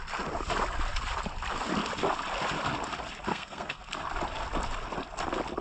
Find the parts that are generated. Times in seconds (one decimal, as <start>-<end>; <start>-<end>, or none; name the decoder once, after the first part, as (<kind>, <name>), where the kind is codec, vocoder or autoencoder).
3.3-3.9 (codec, SNAC)